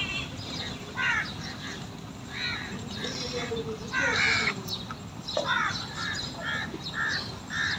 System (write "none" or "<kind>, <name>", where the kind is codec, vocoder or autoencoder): none